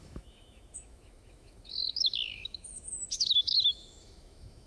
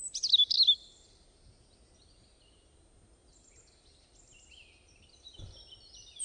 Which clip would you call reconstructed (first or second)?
first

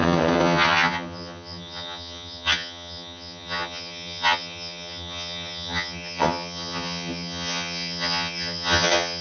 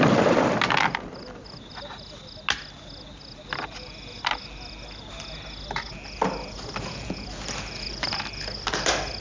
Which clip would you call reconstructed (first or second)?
first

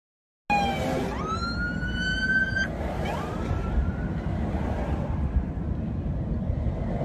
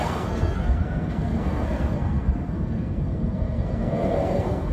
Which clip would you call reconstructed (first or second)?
second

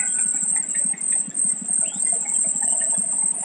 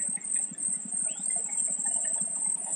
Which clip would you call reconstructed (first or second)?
second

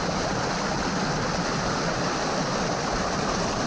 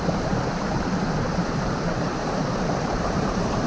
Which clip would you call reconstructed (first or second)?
second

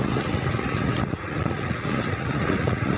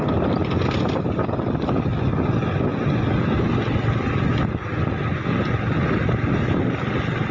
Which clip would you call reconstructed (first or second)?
first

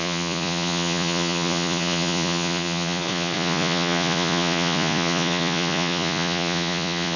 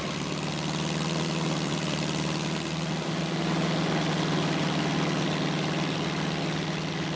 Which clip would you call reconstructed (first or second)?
first